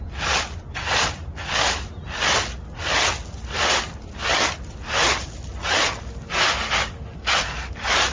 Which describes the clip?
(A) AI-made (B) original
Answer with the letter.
B